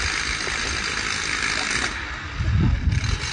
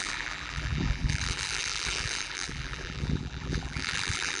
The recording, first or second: first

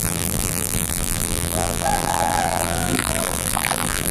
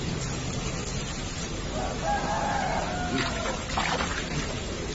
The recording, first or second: second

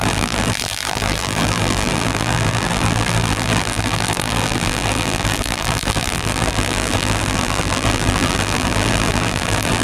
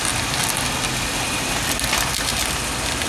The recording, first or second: second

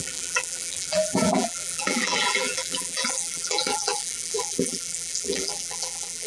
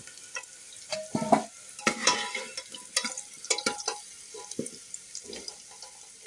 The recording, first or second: second